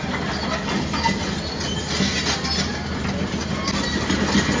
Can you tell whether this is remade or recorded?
recorded